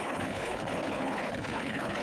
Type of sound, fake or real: fake